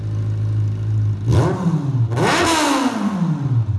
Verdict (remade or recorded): recorded